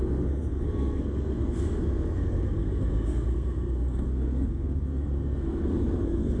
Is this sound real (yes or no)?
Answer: no